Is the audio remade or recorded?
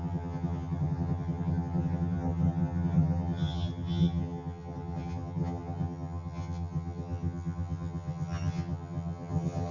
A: remade